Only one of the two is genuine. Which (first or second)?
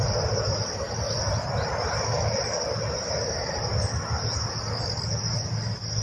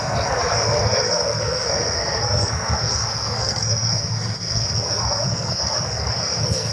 first